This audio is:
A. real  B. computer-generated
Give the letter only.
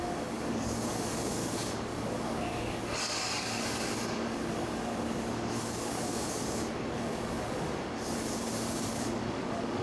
B